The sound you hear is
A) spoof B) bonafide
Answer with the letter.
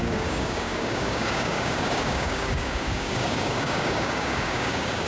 A